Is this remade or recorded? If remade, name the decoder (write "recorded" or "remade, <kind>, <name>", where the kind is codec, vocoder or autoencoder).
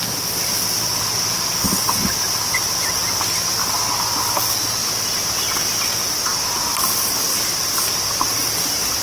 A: recorded